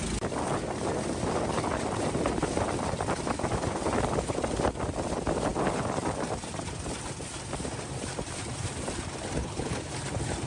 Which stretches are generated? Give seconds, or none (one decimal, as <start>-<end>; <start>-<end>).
9.4-9.9